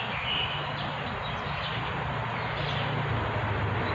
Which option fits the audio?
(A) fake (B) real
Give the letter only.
B